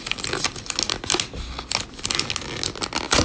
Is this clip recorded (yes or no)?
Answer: yes